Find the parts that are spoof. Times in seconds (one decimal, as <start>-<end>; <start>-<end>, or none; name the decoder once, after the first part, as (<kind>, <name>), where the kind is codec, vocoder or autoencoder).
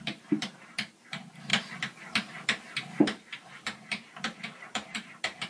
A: 0.0-1.5 (vocoder, BigVGAN v2); 3.0-5.5